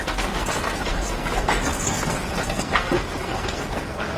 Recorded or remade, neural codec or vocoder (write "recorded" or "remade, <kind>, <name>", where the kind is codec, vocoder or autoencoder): remade, codec, SNAC